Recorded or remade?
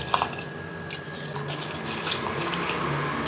recorded